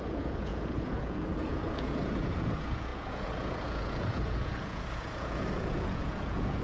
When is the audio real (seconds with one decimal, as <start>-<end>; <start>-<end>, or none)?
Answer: none